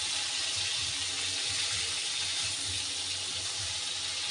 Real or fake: real